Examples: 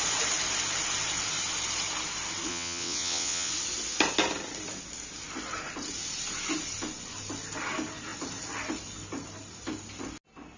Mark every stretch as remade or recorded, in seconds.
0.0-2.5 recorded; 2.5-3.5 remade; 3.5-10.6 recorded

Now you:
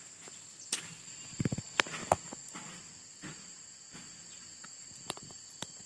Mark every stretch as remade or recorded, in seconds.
0.0-5.9 recorded

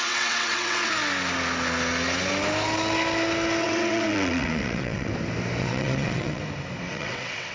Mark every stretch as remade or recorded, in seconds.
0.0-0.9 remade; 0.9-3.6 recorded; 3.6-5.1 remade; 5.1-5.6 recorded; 5.6-6.4 remade; 6.4-6.9 recorded; 6.9-7.5 remade